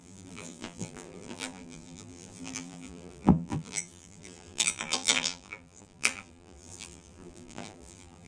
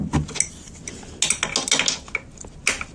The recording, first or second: second